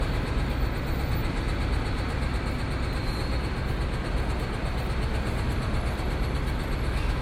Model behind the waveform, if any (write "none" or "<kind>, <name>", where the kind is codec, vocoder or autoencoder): none